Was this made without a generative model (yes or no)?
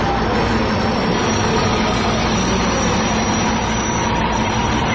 yes